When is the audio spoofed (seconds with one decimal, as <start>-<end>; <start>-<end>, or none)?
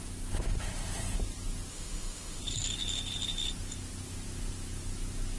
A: 1.7-2.4